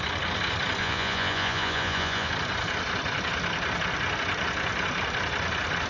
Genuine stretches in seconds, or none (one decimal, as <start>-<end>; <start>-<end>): 0.0-0.8; 2.3-5.9